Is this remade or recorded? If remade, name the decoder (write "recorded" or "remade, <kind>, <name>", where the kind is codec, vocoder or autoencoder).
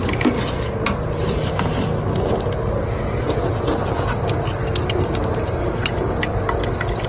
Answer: recorded